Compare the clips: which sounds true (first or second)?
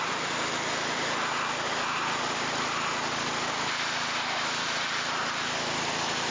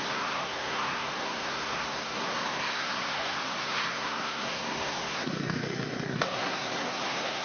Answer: first